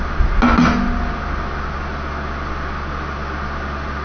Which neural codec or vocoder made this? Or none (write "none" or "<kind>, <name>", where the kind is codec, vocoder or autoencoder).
none